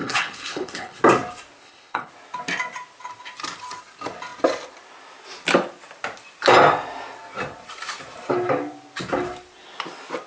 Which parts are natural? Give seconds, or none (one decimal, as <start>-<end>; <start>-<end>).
1.0-1.6; 2.1-10.3